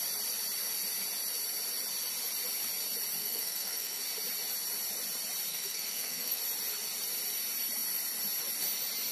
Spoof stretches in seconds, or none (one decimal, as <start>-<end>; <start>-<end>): 3.2-4.0; 5.5-6.4